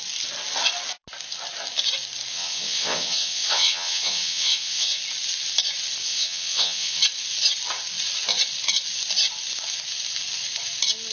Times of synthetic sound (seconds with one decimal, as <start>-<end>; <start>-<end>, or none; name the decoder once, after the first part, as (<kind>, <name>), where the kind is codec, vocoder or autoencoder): 2.3-5.0 (vocoder, WaveNeXt); 6.0-7.0